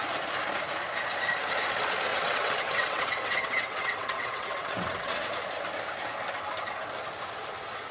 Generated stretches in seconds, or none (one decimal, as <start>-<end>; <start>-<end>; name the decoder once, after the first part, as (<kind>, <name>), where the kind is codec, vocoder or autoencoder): 2.1-5.3 (vocoder, WaveNeXt)